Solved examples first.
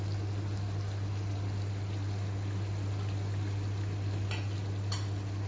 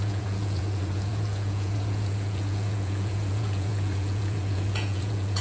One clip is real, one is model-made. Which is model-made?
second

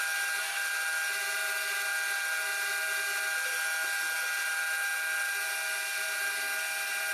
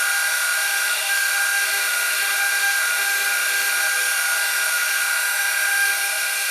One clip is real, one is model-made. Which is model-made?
second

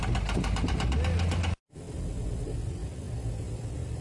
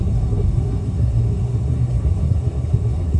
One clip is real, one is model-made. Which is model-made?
second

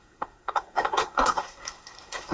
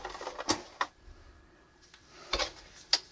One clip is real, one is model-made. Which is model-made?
first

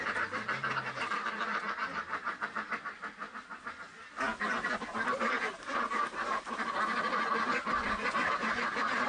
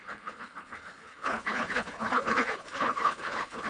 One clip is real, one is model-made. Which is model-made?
second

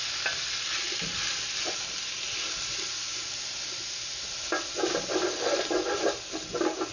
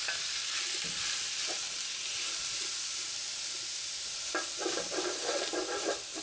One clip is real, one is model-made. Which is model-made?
second